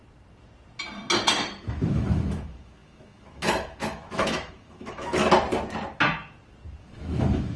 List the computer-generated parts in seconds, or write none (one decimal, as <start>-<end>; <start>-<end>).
1.6-5.2; 6.8-7.6